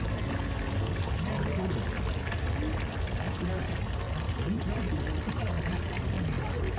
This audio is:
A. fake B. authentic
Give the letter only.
B